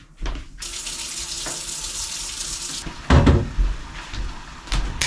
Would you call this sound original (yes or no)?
yes